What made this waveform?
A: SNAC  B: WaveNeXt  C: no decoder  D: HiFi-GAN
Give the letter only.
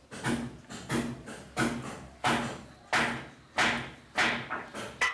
C